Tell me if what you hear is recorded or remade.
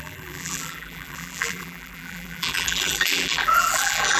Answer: remade